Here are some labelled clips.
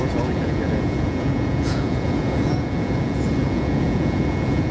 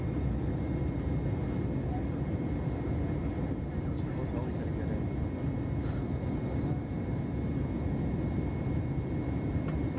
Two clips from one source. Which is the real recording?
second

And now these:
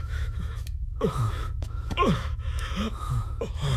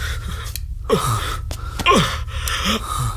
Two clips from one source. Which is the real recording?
second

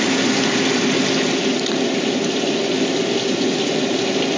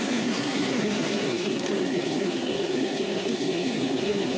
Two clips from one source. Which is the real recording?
first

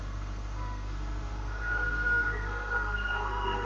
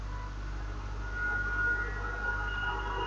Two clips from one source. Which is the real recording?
second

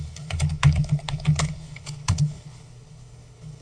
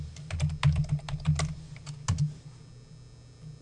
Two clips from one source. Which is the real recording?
second